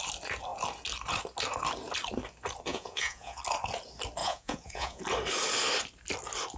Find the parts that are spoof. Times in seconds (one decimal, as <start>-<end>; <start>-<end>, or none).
2.7-3.4; 4.2-5.0